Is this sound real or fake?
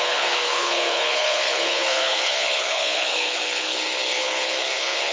fake